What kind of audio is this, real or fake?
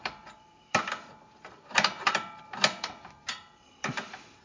fake